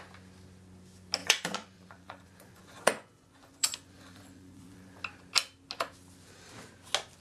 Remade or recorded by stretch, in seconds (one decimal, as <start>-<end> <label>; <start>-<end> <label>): 0.0-1.2 recorded; 1.2-5.0 remade; 5.0-7.2 recorded